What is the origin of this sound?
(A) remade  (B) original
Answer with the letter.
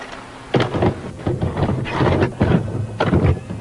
B